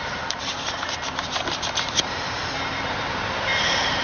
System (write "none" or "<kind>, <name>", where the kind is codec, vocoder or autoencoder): vocoder, BigVGAN v2